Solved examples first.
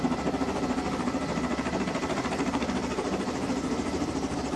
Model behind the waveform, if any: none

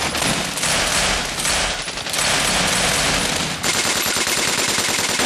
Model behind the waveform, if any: none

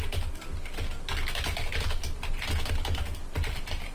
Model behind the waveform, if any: none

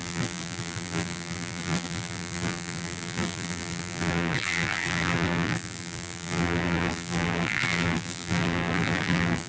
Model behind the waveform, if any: vocoder, BigVGAN v2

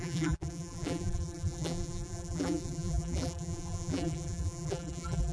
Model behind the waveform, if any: vocoder, BigVGAN v2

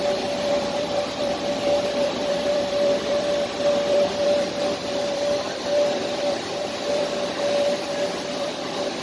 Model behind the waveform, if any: vocoder, BigVGAN v2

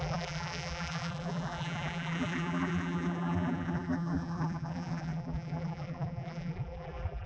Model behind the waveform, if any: vocoder, BigVGAN v2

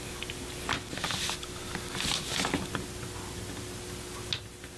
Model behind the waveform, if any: none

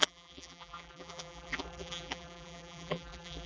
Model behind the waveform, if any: vocoder, BigVGAN v2